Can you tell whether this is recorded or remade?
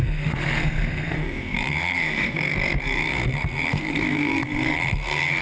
remade